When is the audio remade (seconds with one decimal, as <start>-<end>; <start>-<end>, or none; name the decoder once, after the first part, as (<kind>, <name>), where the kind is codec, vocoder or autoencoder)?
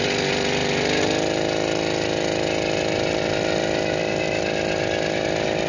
none